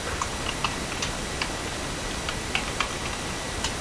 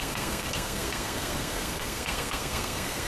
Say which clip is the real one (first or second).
first